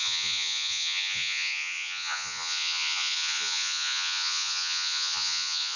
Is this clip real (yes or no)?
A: no